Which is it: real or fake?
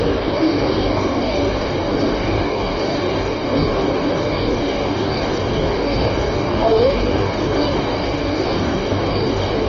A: fake